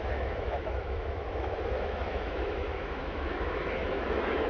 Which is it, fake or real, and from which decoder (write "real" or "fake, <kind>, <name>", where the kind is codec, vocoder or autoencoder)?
fake, autoencoder, DAC-VAE